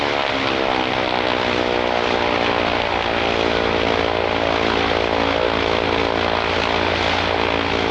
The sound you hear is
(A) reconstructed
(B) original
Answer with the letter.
B